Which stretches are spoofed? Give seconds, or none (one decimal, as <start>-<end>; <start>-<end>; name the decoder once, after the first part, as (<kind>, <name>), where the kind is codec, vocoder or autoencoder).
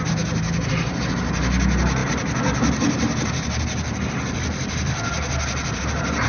2.0-5.8 (vocoder, BigVGAN v2)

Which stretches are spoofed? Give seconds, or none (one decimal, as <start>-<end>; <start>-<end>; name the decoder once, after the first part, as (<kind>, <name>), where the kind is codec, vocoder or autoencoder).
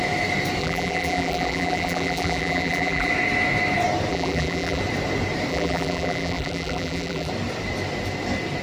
0.6-3.1 (vocoder, BigVGAN v2); 4.1-4.8; 5.5-7.3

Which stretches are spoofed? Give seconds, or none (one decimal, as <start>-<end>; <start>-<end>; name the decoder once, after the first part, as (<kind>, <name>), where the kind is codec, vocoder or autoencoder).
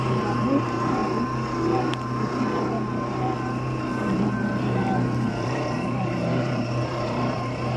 0.0-1.0 (vocoder, BigVGAN v2); 4.3-7.8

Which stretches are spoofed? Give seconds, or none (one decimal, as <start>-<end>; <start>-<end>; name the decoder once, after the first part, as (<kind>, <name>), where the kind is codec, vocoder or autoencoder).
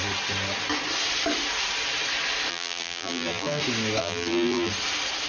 2.5-3.6 (vocoder, BigVGAN v2); 4.0-4.7